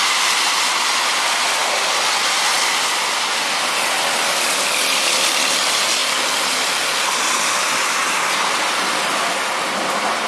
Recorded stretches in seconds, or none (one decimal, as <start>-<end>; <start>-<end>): 0.0-10.3